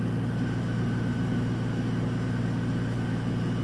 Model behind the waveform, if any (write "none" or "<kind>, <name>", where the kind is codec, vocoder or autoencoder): none